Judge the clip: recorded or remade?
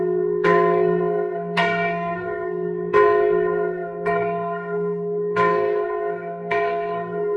remade